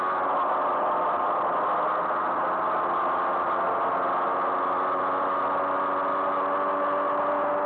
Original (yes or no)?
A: yes